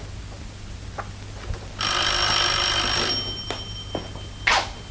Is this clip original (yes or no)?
yes